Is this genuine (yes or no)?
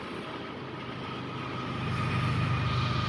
yes